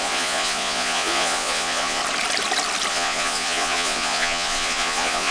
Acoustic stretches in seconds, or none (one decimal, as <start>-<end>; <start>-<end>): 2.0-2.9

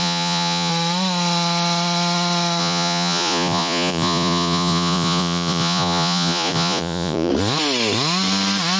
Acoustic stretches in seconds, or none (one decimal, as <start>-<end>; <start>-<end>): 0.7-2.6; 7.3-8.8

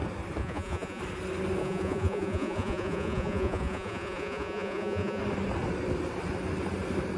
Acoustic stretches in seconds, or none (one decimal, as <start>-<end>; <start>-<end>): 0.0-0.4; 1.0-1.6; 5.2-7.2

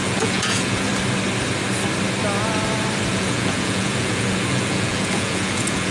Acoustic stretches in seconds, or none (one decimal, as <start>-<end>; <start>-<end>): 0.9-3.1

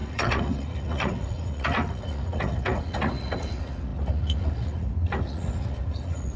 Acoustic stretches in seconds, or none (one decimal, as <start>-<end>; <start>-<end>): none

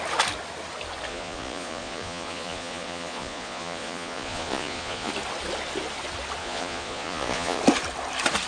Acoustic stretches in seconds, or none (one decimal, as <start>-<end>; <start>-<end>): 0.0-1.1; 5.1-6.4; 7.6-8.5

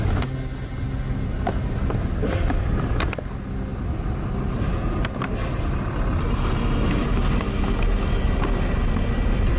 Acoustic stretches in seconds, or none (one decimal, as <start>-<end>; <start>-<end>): 0.0-9.6